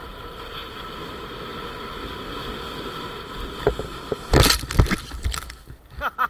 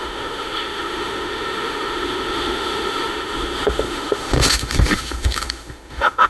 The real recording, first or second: first